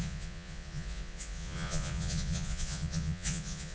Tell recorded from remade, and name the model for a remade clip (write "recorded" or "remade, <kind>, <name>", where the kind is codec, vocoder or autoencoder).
remade, vocoder, Vocos